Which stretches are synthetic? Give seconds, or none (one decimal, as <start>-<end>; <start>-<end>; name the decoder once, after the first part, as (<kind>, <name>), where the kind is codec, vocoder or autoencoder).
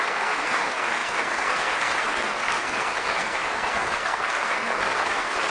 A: 0.0-5.5 (codec, SNAC)